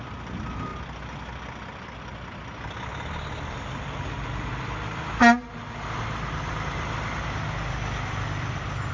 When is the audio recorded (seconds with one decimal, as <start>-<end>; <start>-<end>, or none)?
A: 0.0-8.9